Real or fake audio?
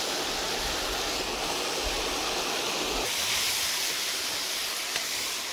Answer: real